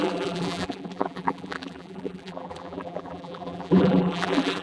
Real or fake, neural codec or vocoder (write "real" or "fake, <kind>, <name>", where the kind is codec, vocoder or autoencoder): fake, vocoder, BigVGAN v2